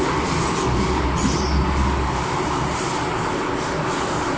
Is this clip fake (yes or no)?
no